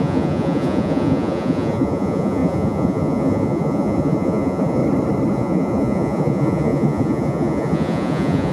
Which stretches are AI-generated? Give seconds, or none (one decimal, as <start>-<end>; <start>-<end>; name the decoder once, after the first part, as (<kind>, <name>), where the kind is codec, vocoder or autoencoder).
0.0-4.8 (vocoder, Vocos); 5.3-8.5